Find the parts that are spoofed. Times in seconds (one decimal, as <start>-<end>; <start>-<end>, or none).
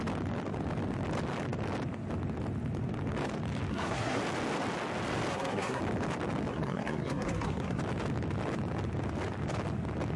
3.7-4.2; 5.3-5.8; 6.5-7.8